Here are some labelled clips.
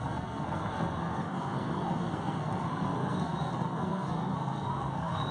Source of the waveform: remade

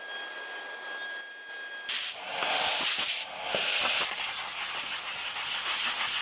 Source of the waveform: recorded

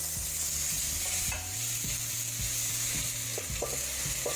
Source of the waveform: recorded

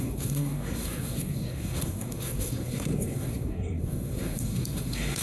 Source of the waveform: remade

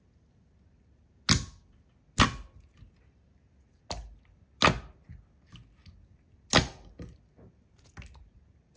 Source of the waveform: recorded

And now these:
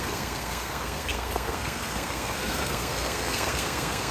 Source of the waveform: remade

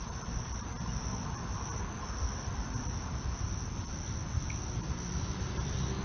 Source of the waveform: recorded